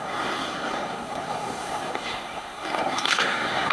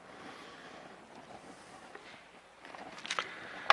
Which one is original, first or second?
second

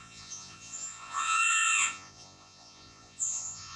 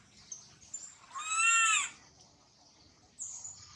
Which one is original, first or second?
second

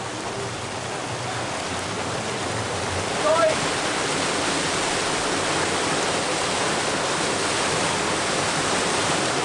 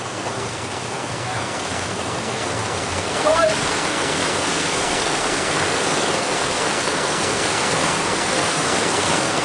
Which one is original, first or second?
first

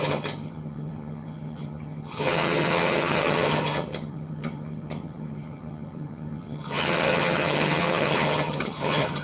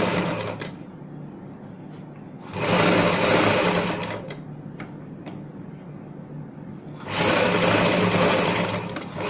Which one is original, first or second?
second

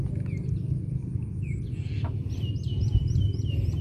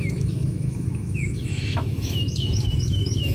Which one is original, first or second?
first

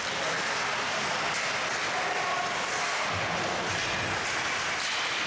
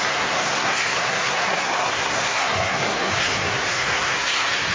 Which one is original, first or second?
first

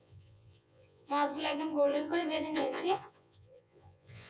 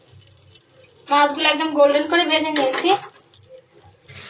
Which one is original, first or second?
second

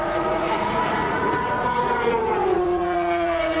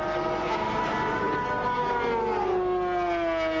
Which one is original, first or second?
second